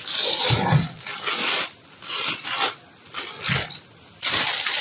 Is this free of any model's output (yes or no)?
yes